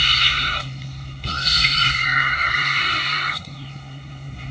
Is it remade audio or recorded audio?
remade